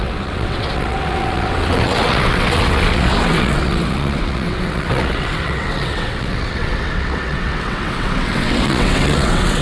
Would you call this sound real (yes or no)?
no